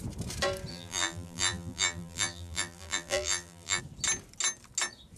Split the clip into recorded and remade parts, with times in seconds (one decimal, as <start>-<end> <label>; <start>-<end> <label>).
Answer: 0.0-0.7 recorded; 0.7-3.8 remade; 3.8-5.2 recorded